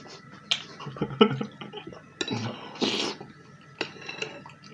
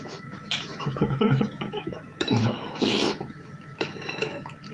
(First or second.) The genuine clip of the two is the first